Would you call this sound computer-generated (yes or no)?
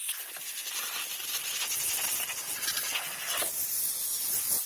no